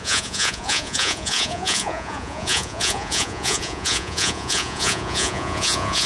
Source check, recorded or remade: remade